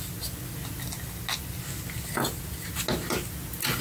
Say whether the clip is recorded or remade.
recorded